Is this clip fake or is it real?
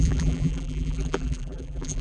fake